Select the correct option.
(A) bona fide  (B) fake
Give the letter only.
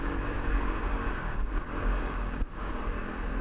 B